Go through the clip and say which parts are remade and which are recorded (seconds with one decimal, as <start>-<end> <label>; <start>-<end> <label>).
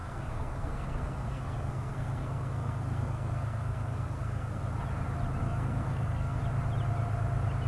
0.0-4.6 remade; 4.6-5.4 recorded; 5.4-6.4 remade; 6.4-7.7 recorded